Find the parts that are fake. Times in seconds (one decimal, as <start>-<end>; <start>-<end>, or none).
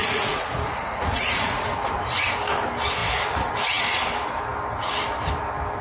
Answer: 0.0-1.6